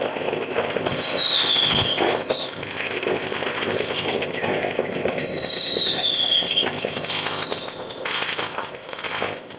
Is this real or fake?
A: fake